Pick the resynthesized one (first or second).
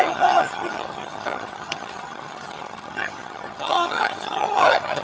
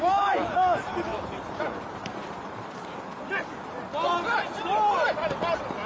first